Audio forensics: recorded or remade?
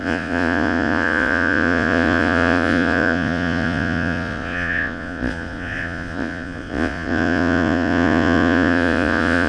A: remade